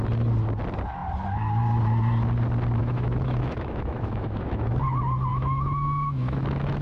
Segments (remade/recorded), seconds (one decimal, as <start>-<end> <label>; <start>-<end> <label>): 0.0-2.8 recorded; 2.8-4.8 remade; 4.8-5.3 recorded; 5.3-6.8 remade